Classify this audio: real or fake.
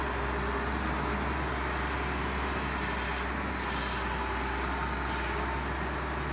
real